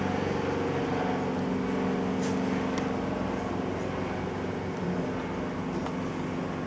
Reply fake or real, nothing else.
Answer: real